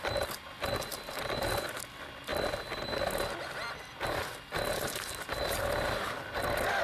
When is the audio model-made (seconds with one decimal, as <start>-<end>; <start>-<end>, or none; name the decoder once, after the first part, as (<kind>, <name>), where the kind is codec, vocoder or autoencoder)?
0.9-1.5 (vocoder, BigVGAN v2)